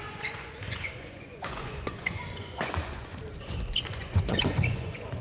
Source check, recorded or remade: remade